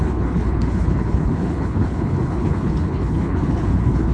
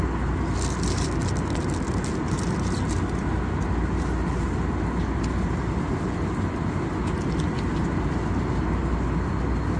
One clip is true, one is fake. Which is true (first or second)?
second